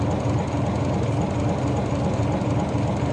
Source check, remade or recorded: recorded